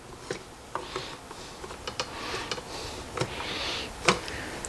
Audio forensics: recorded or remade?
recorded